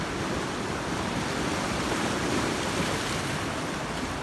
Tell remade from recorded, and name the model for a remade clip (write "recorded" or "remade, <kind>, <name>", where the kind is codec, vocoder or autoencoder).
remade, vocoder, BigVGAN v2